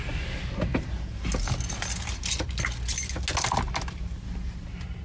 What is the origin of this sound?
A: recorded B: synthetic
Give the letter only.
A